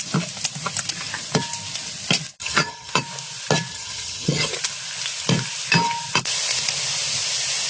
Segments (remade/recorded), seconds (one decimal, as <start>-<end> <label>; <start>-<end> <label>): 0.0-2.4 recorded; 2.4-2.9 remade; 2.9-3.7 recorded; 3.7-4.5 remade; 4.5-7.7 recorded